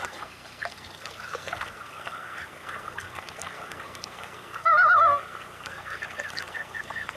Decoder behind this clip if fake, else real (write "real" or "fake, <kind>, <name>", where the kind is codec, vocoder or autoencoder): fake, codec, SNAC